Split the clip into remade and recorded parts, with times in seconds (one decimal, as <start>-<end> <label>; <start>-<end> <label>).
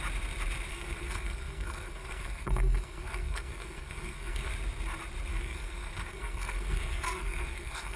0.0-0.7 recorded; 0.7-4.5 remade; 4.5-5.3 recorded; 5.3-8.0 remade